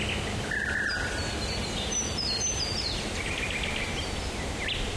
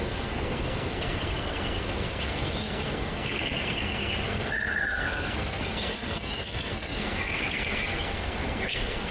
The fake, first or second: second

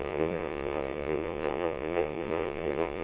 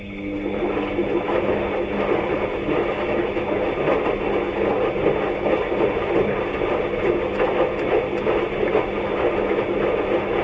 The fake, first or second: first